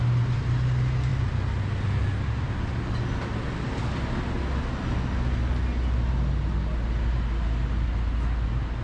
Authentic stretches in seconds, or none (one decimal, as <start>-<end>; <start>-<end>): 0.0-8.8